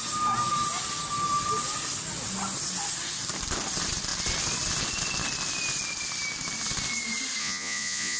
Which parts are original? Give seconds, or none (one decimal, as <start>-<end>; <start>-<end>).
0.0-7.4